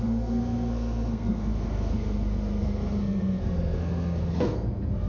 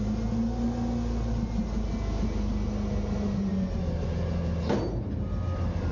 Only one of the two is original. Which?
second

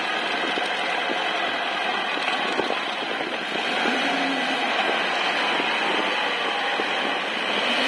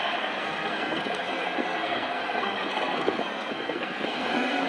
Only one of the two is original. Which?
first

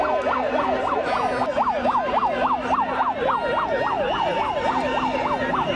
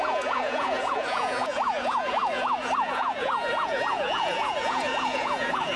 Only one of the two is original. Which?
first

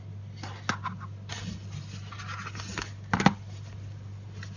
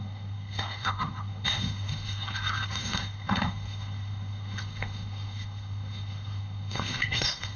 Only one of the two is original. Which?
first